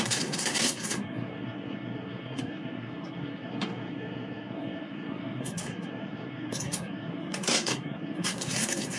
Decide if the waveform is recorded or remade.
remade